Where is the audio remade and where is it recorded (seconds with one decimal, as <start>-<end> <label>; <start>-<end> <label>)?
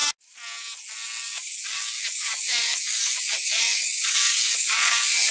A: 0.0-1.3 recorded; 1.3-5.3 remade